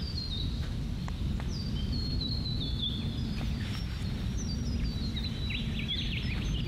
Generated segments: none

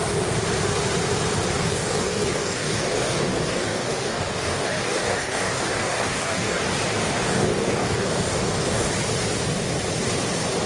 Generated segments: 1.6-6.6 (codec, DAC); 7.0-8.9

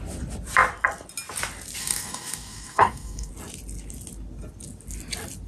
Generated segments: 1.8-3.3 (codec, DAC)

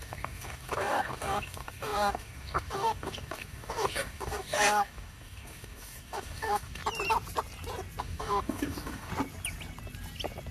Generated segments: 0.0-6.8 (codec, DAC); 8.0-9.1

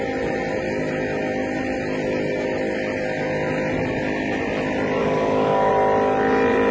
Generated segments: 5.0-5.7 (codec, DAC)